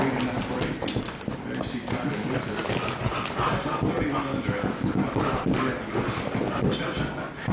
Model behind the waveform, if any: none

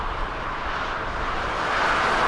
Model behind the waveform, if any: none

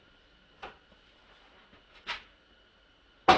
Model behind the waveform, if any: none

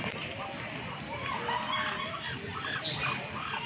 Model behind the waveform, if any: none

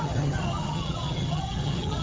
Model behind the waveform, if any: vocoder, HiFi-GAN